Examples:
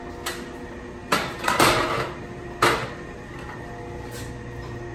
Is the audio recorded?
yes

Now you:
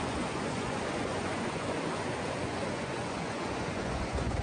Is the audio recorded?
no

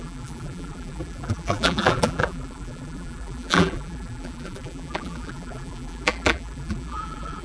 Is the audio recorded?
no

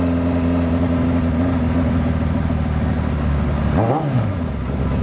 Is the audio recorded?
yes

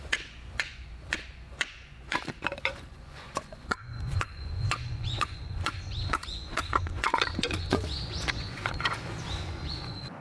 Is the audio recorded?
no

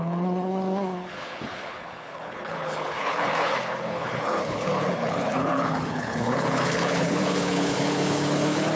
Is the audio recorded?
no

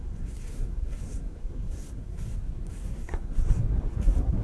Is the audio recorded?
no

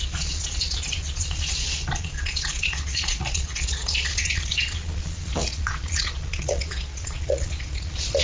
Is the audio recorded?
no